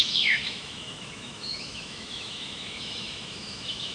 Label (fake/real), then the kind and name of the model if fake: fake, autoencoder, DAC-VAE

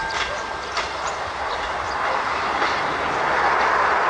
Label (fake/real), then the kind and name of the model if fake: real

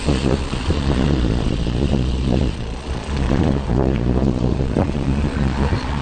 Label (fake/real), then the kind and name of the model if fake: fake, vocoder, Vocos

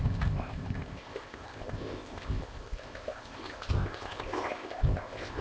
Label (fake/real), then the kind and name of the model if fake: fake, codec, ZipCodec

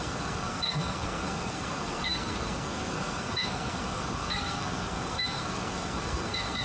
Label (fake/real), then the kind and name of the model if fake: fake, codec, SNAC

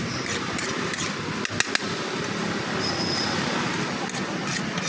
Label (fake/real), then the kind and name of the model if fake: real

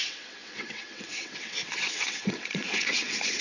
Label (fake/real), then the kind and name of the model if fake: fake, vocoder, WaveNeXt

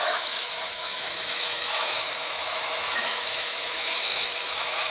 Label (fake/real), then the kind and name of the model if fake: fake, autoencoder, DAC-VAE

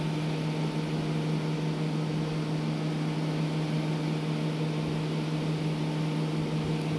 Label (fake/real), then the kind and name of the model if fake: real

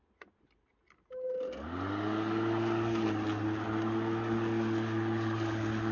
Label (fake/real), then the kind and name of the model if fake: real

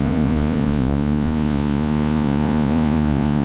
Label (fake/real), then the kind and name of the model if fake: fake, vocoder, Vocos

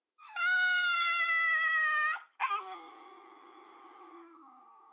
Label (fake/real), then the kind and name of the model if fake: fake, codec, DAC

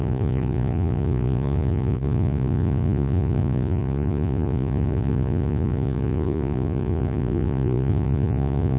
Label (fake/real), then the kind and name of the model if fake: fake, vocoder, Vocos